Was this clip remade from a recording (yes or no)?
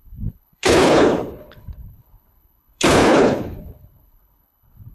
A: yes